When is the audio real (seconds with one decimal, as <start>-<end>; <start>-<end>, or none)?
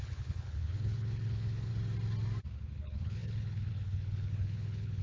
1.7-2.5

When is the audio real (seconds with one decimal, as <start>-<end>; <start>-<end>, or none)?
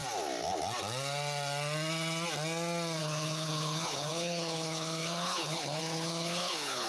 0.0-3.0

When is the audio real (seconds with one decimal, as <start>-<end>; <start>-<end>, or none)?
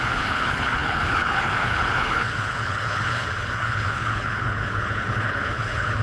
none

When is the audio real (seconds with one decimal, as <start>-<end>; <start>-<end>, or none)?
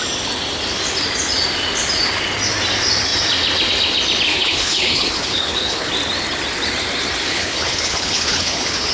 0.0-4.3; 5.9-7.2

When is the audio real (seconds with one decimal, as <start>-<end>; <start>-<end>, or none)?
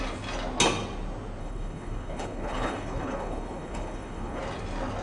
0.0-1.4; 4.4-5.0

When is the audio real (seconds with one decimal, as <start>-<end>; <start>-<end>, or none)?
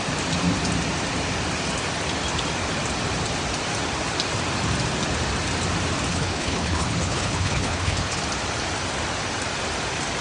0.0-6.1; 8.2-10.2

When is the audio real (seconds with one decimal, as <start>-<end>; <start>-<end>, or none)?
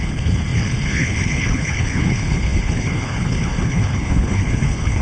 none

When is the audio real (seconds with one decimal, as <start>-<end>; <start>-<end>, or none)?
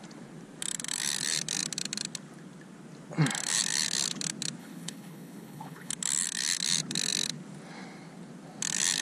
0.0-4.6; 5.9-9.0